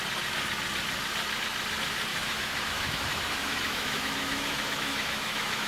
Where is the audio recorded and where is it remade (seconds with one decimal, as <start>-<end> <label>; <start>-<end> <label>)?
0.0-2.1 recorded; 2.1-5.7 remade